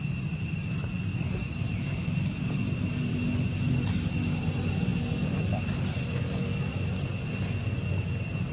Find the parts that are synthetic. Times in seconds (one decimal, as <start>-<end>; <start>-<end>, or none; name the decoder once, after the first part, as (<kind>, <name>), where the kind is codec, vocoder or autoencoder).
1.1-1.7 (codec, DAC); 6.4-6.9